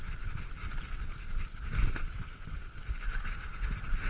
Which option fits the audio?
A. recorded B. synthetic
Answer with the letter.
A